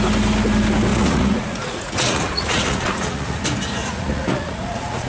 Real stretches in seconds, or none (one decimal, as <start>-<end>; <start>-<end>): 0.0-0.9; 3.4-3.8